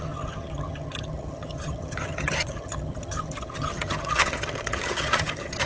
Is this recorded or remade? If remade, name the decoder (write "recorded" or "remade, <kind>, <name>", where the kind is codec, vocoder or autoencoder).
remade, vocoder, HiFi-GAN